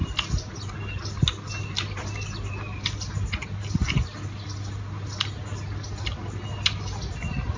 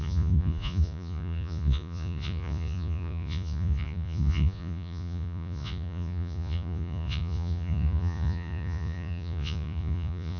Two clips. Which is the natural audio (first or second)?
first